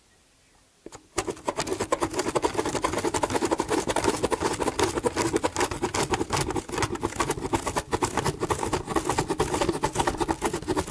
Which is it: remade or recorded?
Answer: recorded